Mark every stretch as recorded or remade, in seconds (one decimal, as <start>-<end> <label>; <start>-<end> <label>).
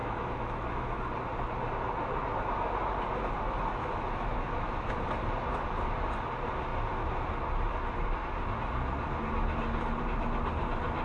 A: 0.0-1.0 remade; 1.0-3.8 recorded; 3.8-4.9 remade; 4.9-11.0 recorded